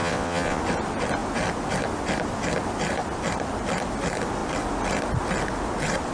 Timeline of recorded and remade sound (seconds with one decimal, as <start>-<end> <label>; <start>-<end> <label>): 0.0-0.6 remade; 0.6-6.1 recorded